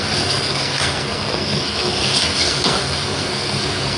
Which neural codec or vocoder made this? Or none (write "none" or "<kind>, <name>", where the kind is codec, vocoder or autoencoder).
codec, SNAC